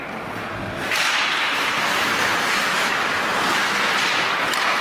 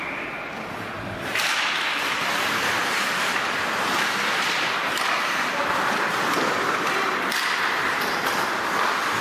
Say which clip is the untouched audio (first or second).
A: first